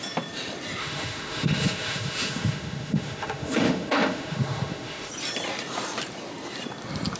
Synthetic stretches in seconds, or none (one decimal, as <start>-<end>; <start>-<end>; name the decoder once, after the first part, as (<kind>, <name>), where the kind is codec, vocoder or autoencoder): 0.8-5.1 (autoencoder, DAC-VAE)